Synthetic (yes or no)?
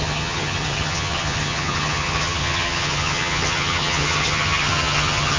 yes